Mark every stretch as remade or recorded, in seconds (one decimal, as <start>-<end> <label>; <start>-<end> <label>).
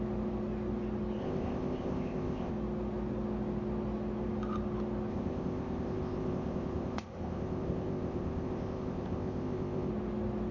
0.0-1.2 recorded; 1.2-2.5 remade; 2.5-5.1 recorded; 5.1-9.9 remade; 9.9-10.5 recorded